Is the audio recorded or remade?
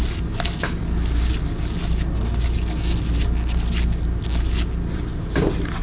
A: recorded